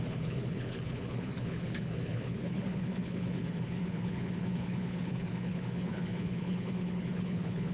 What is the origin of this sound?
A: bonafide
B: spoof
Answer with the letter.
B